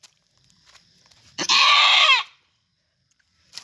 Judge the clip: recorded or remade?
remade